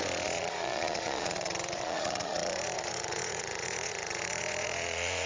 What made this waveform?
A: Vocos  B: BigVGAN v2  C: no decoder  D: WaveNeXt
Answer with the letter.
A